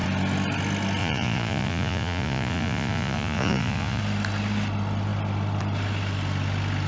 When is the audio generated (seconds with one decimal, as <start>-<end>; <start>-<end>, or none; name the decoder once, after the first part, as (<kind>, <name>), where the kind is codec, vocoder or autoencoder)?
1.0-4.0 (vocoder, Vocos)